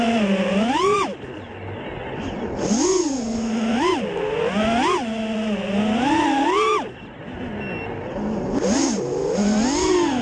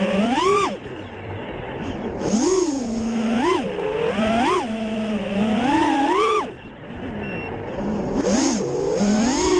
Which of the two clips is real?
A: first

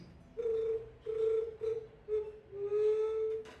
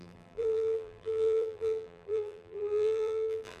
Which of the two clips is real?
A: first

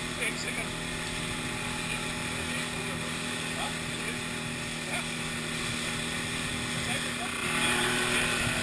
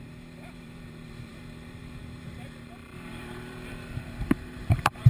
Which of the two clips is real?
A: first